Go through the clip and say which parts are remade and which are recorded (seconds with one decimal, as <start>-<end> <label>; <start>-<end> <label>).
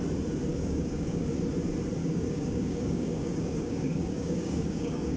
0.0-0.5 recorded; 0.5-1.3 remade; 1.3-2.0 recorded; 2.0-5.2 remade